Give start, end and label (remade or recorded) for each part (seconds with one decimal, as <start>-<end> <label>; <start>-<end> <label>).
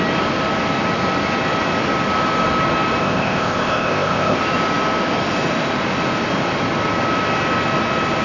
0.0-3.0 recorded; 3.0-4.4 remade; 4.4-8.2 recorded